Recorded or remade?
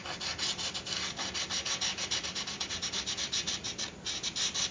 recorded